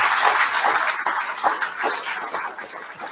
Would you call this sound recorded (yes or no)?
yes